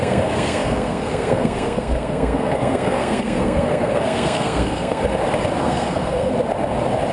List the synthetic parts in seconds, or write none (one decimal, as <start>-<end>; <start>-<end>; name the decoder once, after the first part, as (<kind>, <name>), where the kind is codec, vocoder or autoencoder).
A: 0.0-5.0 (codec, SNAC); 5.6-6.3